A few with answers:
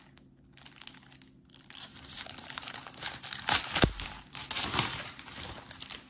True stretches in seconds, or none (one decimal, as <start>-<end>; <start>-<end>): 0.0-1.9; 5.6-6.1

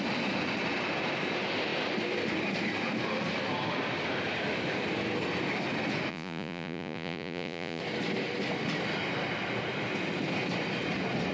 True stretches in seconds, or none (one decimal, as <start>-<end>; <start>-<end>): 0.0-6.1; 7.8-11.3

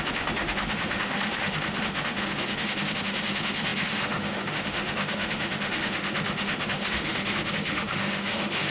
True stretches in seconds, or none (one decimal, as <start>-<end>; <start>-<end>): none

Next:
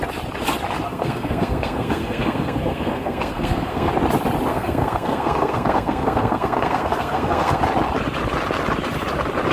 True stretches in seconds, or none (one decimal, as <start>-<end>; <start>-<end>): 0.0-0.9; 3.9-4.5; 7.6-9.5